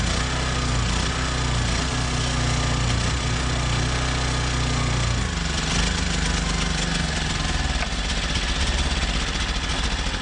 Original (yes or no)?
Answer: yes